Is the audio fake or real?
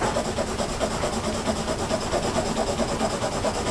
real